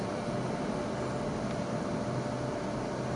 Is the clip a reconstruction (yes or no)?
no